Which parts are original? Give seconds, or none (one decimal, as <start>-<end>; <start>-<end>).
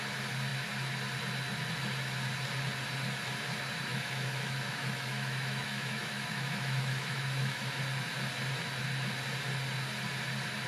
0.0-3.9; 7.8-10.7